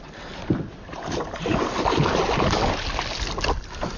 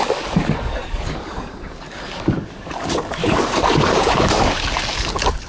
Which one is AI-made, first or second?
second